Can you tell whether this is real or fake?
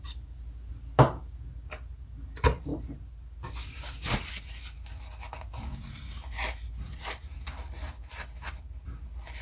real